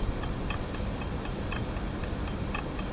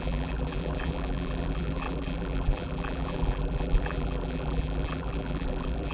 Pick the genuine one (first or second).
first